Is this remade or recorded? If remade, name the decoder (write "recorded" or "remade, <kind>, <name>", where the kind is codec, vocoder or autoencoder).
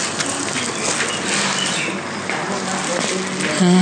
recorded